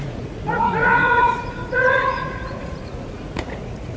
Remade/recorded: remade